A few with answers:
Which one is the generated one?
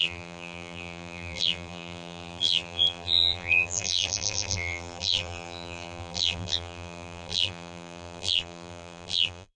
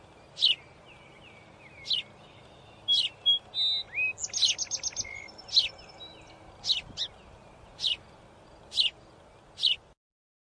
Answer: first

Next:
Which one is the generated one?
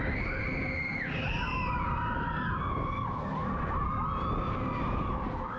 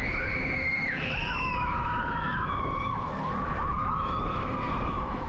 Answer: second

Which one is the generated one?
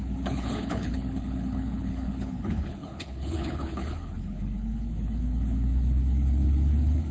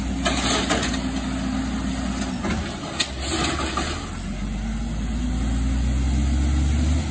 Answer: first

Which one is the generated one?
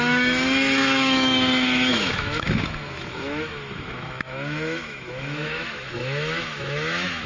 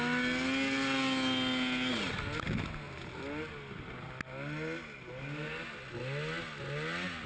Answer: first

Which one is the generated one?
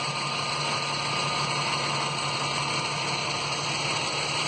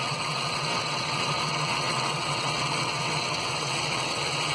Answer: second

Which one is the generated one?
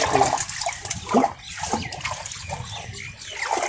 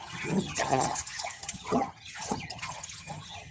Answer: second